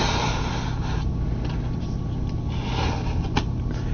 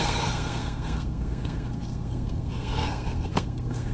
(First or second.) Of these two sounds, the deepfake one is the second